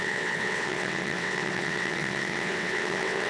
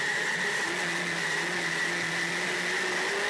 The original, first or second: second